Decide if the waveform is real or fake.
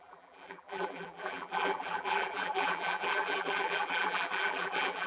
fake